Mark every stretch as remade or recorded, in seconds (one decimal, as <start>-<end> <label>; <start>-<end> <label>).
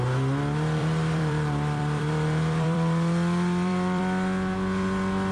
0.0-0.8 recorded; 0.8-4.0 remade; 4.0-5.3 recorded